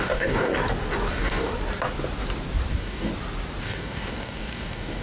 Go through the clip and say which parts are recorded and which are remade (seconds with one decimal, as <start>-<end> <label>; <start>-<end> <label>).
0.0-0.5 remade; 0.5-1.1 recorded; 1.1-1.5 remade; 1.5-2.7 recorded; 2.7-3.1 remade; 3.1-3.6 recorded; 3.6-5.0 remade